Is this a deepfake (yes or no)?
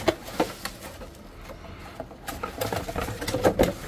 no